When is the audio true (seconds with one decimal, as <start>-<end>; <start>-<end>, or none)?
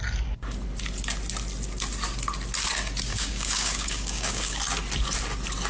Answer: 0.0-3.1; 4.6-5.7